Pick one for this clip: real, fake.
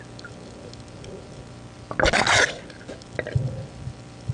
real